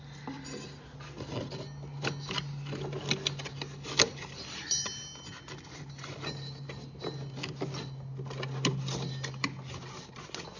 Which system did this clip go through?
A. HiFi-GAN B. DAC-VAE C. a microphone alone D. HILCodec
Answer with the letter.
C